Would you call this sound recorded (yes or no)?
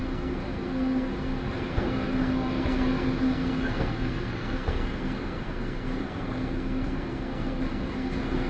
no